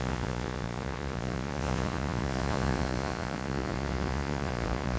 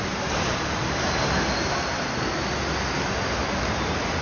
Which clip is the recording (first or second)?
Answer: second